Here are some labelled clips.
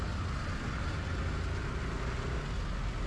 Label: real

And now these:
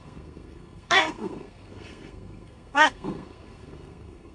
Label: fake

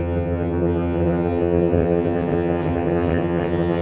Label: fake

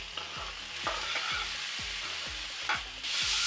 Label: real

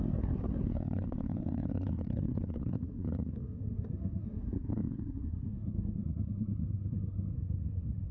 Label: fake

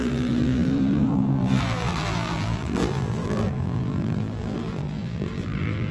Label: fake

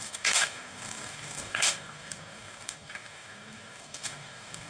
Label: fake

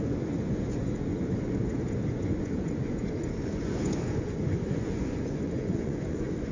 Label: fake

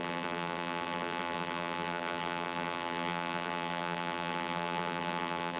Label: fake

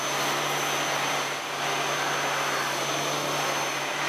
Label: real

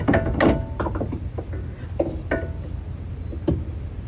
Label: real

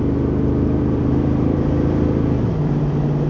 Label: fake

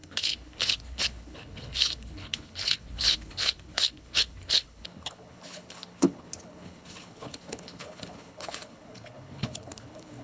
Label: fake